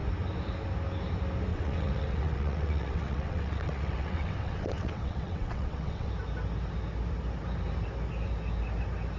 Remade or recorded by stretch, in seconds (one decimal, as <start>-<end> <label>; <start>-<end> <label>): 0.0-1.5 recorded; 1.5-6.1 remade; 6.1-9.2 recorded